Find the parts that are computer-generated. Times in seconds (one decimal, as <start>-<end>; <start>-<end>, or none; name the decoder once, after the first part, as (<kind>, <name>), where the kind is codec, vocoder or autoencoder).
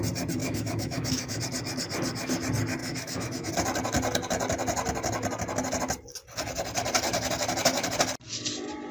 0.4-1.4 (autoencoder, DAC-VAE); 2.8-3.5